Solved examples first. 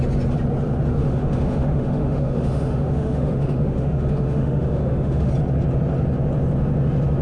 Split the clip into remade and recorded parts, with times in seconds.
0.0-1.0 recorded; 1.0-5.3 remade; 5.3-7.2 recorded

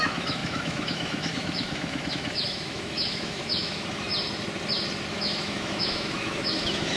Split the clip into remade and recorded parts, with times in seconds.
0.0-4.1 remade; 4.1-5.1 recorded; 5.1-7.0 remade